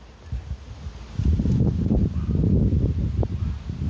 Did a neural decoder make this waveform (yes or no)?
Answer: no